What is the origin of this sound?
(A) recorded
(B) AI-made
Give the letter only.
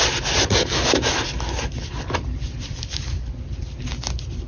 A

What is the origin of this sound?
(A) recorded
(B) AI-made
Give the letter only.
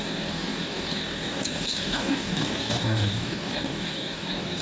B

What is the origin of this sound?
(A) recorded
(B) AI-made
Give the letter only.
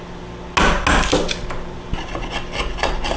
A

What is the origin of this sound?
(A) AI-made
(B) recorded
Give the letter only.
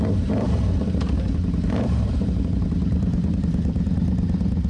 A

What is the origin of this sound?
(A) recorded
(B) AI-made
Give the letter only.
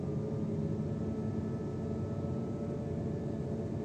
A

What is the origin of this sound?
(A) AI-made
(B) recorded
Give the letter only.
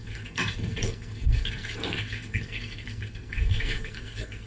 A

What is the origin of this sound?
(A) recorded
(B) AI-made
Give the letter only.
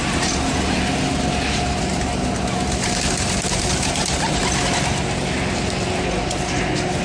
A